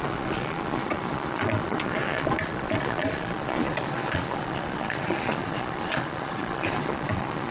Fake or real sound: fake